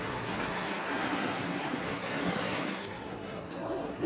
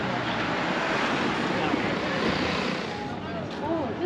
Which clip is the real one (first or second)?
second